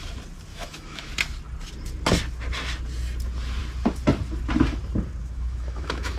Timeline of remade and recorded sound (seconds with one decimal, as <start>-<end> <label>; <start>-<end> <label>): 0.0-0.5 recorded; 0.5-1.1 remade; 1.1-5.2 recorded; 5.2-6.2 remade